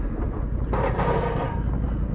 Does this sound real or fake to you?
real